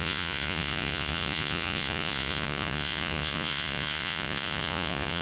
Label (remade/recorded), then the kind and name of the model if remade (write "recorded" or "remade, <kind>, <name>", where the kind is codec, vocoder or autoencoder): remade, vocoder, Vocos